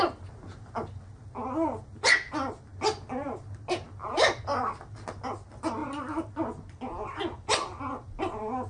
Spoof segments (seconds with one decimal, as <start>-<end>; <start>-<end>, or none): none